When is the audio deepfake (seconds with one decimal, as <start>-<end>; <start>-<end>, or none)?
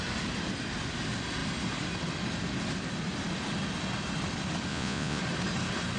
4.7-5.2